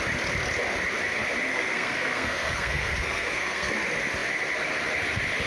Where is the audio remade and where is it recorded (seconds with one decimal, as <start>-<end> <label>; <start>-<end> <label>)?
0.0-1.5 recorded; 1.5-3.7 remade; 3.7-5.5 recorded